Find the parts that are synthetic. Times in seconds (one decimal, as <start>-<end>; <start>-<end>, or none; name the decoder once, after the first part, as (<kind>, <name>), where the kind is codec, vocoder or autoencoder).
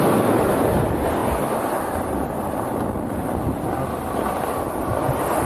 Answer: none